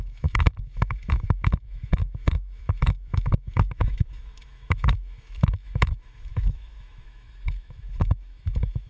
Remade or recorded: remade